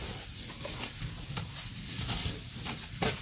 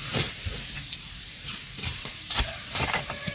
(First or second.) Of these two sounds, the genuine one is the first